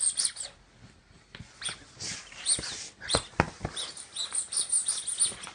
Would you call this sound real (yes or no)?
yes